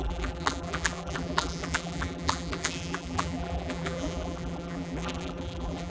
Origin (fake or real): fake